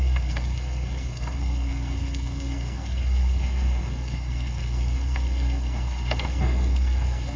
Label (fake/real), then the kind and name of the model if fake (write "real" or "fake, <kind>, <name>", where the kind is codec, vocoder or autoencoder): fake, codec, SNAC